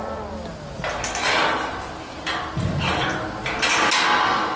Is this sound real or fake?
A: real